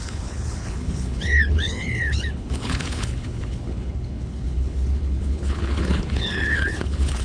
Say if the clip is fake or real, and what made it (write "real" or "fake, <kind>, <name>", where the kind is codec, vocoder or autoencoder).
fake, codec, HILCodec